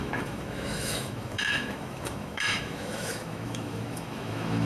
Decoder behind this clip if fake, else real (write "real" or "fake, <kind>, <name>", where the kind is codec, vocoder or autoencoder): fake, autoencoder, DAC-VAE